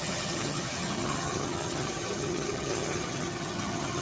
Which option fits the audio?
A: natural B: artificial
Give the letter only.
B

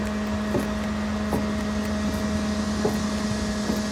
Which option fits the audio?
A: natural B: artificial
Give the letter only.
A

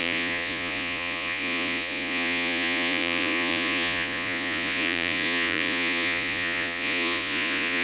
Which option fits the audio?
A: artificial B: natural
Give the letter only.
A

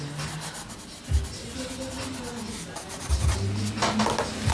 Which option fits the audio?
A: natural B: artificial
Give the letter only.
A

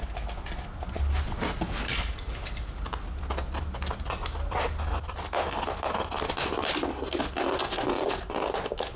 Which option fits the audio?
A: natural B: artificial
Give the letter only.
A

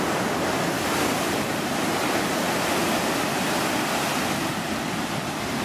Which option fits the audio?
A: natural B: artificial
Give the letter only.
A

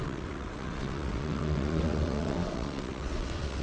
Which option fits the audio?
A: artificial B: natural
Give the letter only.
A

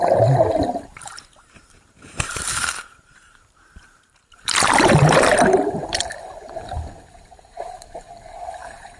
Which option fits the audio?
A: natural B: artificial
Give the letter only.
B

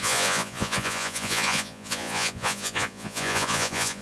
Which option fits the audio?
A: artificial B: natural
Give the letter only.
A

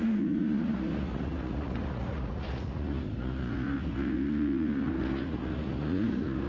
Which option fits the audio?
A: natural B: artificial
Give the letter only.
B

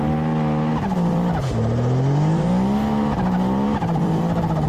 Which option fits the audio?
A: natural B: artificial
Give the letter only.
A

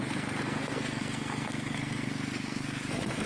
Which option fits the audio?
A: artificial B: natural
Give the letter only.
A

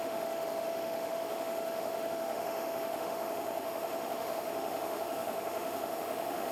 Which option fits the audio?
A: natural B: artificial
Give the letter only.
B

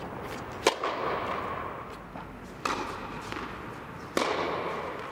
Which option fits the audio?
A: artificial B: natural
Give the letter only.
B